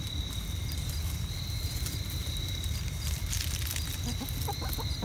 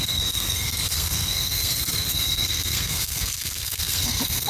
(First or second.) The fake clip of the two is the second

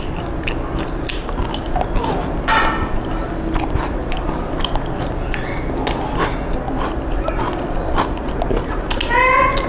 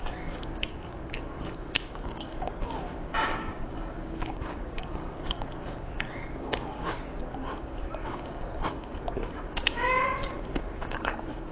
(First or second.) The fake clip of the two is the second